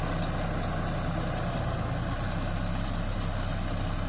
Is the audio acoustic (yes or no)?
yes